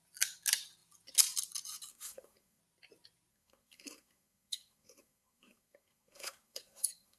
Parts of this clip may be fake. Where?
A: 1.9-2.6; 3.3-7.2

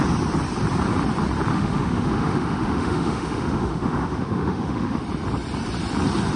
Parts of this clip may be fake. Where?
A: 1.5-5.0

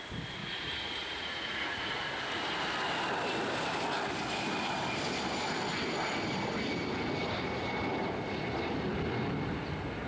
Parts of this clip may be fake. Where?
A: 0.4-2.0

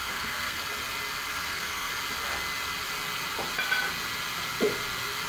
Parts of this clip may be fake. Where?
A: 0.0-0.6; 1.3-1.9

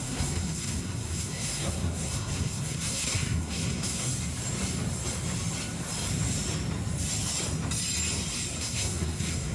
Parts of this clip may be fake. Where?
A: 0.0-4.1; 8.6-9.5

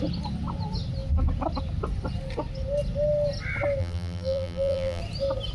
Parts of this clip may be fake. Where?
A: 3.8-5.0

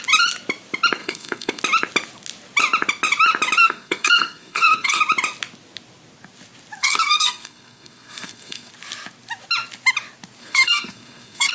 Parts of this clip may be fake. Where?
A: 1.0-1.6; 3.6-5.0; 6.8-8.7; 10.4-11.5